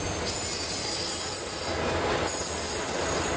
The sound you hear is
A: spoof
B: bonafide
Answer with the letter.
B